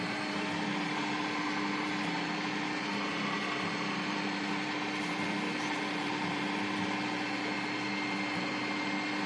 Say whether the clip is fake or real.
real